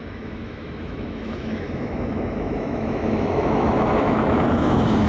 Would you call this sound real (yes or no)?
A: no